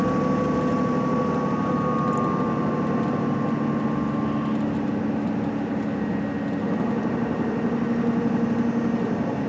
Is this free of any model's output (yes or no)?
yes